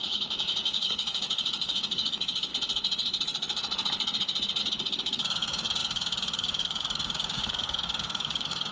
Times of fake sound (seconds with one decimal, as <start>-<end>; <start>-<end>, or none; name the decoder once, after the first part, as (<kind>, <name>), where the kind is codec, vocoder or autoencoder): 0.0-2.5 (codec, DAC); 4.6-8.7

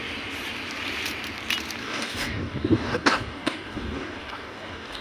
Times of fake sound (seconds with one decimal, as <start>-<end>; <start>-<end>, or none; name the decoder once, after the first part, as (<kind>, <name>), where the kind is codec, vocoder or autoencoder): 1.8-5.0 (codec, DAC)

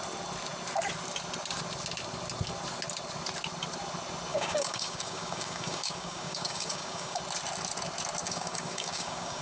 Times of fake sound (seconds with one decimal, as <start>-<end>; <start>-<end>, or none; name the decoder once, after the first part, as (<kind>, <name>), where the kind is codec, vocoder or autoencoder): 4.3-7.2 (codec, DAC); 8.2-9.4

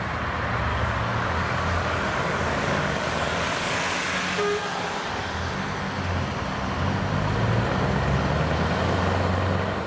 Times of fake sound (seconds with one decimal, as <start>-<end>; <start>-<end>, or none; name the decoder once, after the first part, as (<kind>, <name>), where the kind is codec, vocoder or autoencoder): 0.7-5.5 (codec, DAC)

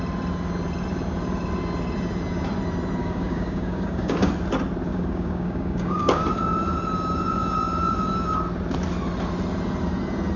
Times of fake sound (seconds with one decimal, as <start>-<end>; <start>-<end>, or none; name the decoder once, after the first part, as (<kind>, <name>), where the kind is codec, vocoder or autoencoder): 3.0-4.3 (codec, DAC); 4.9-6.2

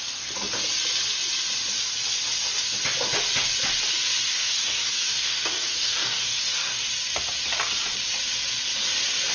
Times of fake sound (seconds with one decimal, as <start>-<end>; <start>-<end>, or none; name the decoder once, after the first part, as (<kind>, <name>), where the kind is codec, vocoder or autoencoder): 4.3-6.9 (codec, DAC)